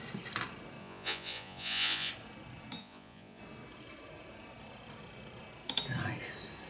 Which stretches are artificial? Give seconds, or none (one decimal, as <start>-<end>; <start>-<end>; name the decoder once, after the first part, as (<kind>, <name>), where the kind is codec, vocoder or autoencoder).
0.8-2.1 (vocoder, Vocos); 2.8-3.4